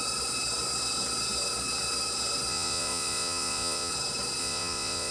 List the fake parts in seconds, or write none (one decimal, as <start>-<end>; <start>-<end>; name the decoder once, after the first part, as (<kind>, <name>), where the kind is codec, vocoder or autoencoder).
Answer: 2.5-3.9 (vocoder, Vocos); 4.4-5.1